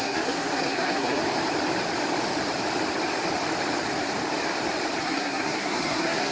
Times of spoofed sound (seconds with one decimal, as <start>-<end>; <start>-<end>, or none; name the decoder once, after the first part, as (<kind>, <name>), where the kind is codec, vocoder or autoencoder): 0.0-1.2 (codec, SNAC); 5.0-6.3